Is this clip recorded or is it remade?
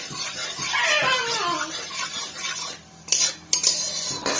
recorded